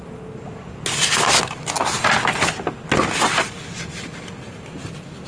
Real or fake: real